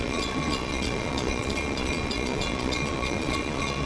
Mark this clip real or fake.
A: fake